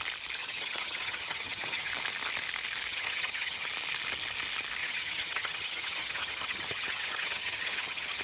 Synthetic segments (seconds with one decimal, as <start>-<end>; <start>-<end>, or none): 0.4-1.9; 2.9-3.7; 4.8-8.2